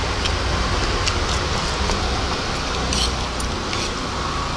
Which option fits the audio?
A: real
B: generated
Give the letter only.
A